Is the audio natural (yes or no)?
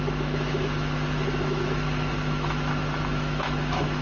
no